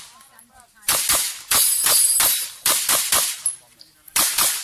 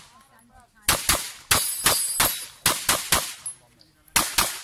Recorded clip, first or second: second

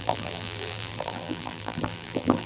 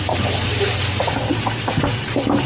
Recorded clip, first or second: second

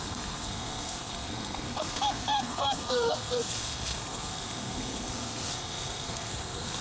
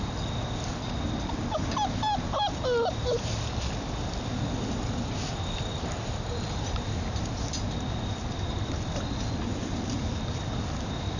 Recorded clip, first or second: second